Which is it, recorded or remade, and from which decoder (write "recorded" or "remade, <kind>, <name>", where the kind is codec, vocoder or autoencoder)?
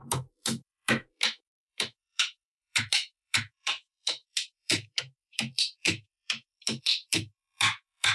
remade, autoencoder, DAC-VAE